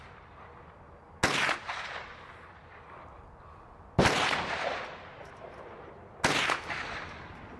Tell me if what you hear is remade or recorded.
recorded